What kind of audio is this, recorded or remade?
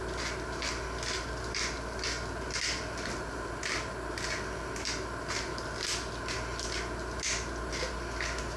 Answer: recorded